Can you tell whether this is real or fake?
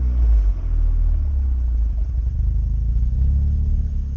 real